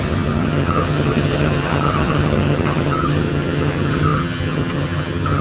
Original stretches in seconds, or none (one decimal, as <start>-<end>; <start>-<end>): none